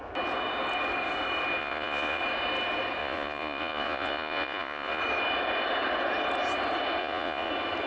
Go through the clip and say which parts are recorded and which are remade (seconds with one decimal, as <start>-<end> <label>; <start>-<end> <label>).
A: 0.0-1.6 recorded; 1.6-2.2 remade; 2.2-3.0 recorded; 3.0-5.0 remade; 5.0-7.0 recorded; 7.0-7.5 remade; 7.5-7.9 recorded